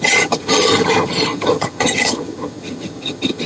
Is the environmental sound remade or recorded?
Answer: remade